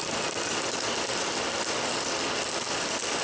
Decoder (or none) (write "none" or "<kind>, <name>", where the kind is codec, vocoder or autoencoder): none